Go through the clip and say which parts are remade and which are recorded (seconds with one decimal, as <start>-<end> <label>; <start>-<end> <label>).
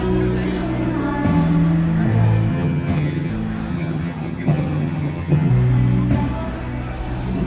0.0-2.5 recorded; 2.5-3.3 remade; 3.3-3.7 recorded; 3.7-5.5 remade; 5.5-7.5 recorded